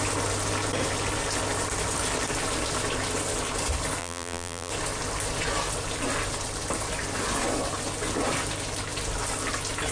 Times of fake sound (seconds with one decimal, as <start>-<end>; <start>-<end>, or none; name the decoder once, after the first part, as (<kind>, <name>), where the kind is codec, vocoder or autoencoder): 4.0-4.7 (vocoder, BigVGAN v2)